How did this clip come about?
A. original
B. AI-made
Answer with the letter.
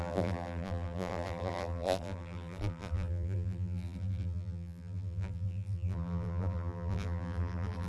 B